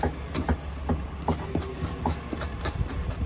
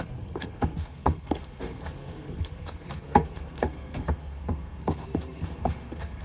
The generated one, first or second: second